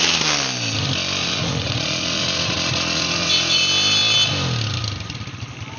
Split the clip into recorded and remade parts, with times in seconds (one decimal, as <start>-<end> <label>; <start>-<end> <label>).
0.0-1.2 recorded; 1.2-3.6 remade; 3.6-5.8 recorded